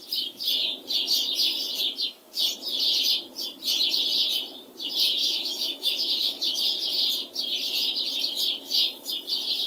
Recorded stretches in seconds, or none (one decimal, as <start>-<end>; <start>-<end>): 0.0-5.2; 6.6-9.7